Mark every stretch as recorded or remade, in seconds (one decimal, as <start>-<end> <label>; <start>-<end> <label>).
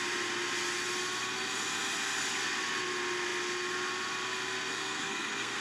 0.0-4.7 recorded; 4.7-5.6 remade